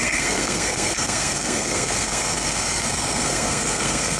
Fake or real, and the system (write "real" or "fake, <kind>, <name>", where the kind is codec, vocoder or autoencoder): fake, codec, SNAC